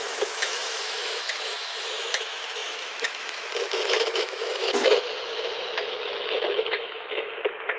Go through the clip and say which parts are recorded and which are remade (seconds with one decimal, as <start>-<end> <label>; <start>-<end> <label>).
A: 0.0-7.8 remade